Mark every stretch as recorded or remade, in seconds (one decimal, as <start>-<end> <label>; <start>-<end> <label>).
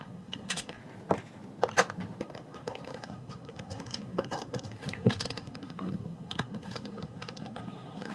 0.0-0.8 remade; 0.8-2.2 recorded; 2.2-8.1 remade